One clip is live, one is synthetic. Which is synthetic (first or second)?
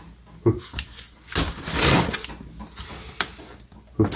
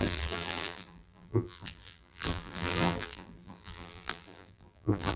second